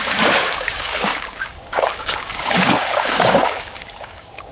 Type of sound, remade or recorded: remade